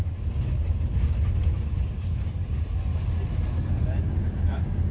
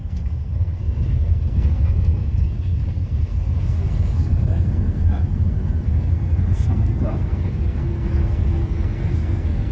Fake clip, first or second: second